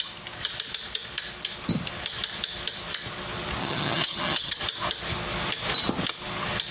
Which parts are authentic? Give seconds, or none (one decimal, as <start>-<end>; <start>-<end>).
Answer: 0.0-3.6; 4.6-6.7